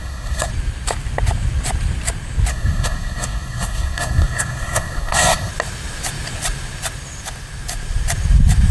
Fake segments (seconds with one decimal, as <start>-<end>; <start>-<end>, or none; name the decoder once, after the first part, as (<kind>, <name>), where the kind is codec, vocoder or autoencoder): 0.0-0.5 (codec, SNAC); 2.5-5.5